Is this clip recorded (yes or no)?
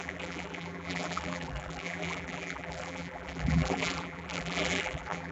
no